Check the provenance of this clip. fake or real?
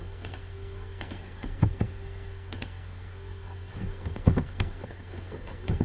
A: fake